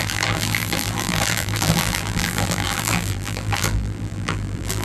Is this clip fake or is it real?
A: fake